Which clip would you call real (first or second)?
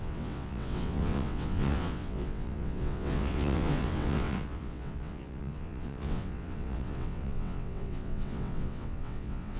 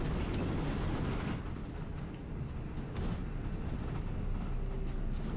second